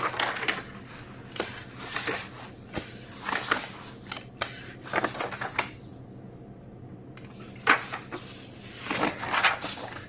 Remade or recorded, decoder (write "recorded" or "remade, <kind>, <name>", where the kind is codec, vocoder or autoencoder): recorded